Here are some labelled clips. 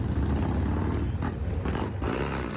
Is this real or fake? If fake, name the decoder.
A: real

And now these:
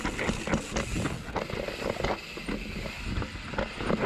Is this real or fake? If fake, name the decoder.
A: real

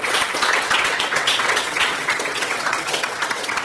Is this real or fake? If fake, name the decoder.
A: fake, vocoder, WaveNeXt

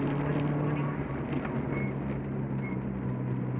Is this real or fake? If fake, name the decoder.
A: real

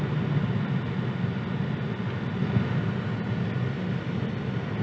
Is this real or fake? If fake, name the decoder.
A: real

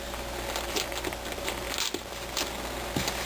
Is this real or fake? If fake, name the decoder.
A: real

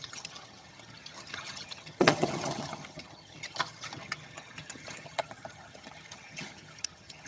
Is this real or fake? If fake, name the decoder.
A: fake, vocoder, HiFi-GAN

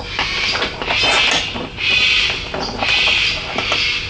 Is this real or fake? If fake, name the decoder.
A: real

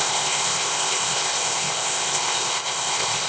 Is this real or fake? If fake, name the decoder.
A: fake, codec, ZipCodec